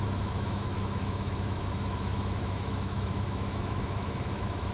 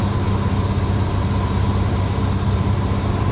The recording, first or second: second